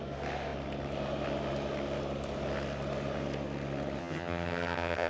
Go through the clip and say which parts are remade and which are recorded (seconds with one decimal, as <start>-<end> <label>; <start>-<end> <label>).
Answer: 0.0-4.0 recorded; 4.0-5.1 remade

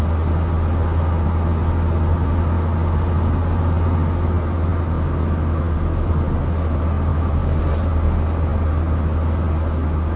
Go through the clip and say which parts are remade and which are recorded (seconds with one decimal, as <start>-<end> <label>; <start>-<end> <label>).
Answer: 0.0-7.1 recorded; 7.1-7.6 remade; 7.6-10.2 recorded

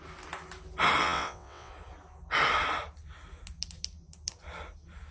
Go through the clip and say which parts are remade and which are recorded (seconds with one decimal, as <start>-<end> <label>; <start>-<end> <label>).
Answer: 0.0-1.0 recorded; 1.0-1.7 remade; 1.7-5.1 recorded